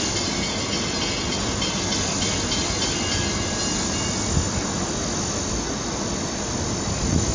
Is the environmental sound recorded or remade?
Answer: recorded